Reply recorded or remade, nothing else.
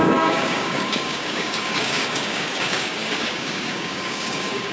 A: remade